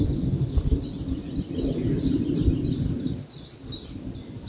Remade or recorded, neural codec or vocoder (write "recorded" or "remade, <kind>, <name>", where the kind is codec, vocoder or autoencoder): recorded